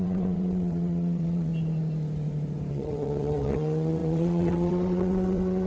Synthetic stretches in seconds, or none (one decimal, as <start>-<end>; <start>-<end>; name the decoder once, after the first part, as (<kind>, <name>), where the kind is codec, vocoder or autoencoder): 0.0-1.5 (vocoder, WaveNeXt); 2.7-5.7